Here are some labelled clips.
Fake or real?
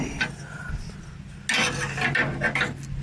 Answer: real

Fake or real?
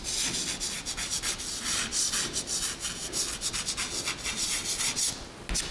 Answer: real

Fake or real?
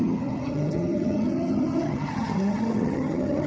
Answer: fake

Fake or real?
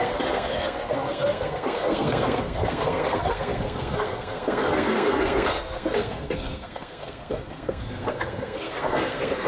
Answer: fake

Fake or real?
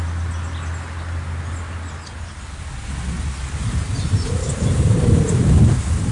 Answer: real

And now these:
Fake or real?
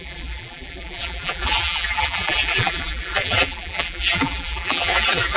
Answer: fake